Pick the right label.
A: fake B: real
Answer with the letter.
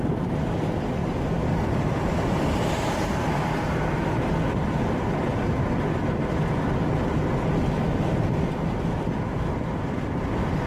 B